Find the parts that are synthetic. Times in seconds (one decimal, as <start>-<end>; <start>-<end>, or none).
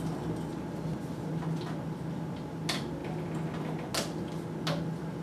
0.5-1.3